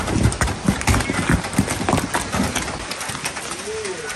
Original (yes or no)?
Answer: yes